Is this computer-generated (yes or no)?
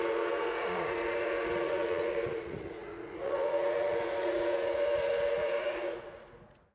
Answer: yes